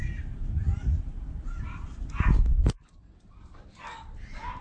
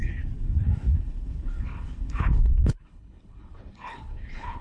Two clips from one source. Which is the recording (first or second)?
first